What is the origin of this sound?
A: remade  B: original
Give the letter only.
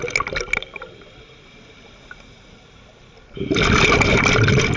B